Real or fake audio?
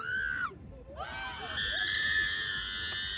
real